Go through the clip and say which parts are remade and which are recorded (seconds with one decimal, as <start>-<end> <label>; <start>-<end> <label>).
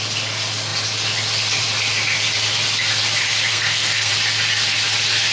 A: 0.0-3.5 recorded; 3.5-4.1 remade; 4.1-5.3 recorded